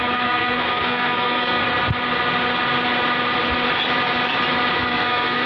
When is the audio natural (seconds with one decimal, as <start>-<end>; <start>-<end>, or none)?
1.6-4.8